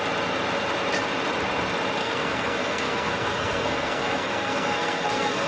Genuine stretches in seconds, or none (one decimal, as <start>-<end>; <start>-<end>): 0.0-2.0